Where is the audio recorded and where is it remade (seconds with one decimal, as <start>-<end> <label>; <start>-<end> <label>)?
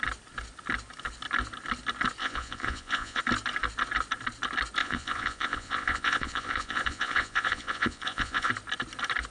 0.0-2.2 recorded; 2.2-3.2 remade; 3.2-4.8 recorded; 4.8-8.5 remade; 8.5-9.3 recorded